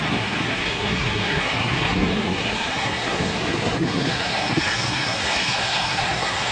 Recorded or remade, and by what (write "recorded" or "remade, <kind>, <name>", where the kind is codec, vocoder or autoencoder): remade, codec, SNAC